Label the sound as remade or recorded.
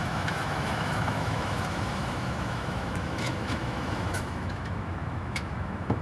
remade